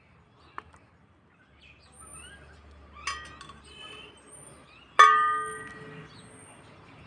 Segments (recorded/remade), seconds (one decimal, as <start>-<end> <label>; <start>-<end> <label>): 0.0-7.1 recorded